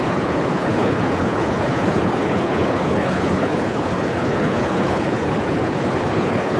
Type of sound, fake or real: fake